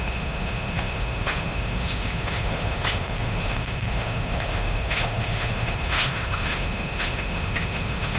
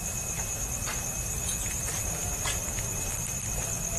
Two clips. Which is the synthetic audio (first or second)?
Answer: first